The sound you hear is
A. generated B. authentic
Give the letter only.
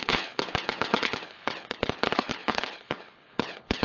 A